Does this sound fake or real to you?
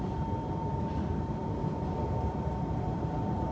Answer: fake